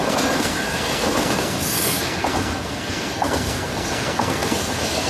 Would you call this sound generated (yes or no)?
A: yes